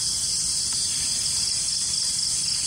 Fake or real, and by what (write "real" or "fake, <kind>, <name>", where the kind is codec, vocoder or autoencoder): real